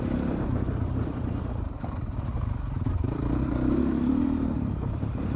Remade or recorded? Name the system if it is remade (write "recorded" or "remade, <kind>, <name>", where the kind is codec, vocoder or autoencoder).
remade, vocoder, BigVGAN v2